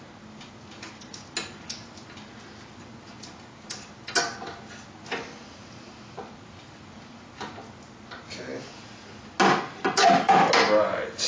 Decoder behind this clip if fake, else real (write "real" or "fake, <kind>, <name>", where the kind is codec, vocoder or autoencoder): real